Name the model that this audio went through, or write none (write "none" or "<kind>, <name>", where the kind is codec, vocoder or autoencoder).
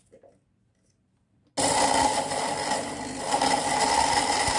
none